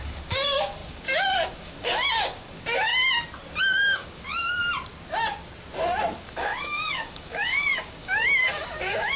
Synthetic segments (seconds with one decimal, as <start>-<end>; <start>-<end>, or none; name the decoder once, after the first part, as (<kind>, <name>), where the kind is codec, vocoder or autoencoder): 0.0-2.9 (codec, DAC); 3.6-4.6; 6.2-9.2